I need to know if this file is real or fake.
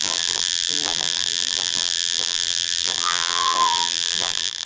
fake